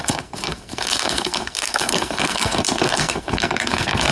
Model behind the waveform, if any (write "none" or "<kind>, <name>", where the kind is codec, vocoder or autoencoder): codec, SNAC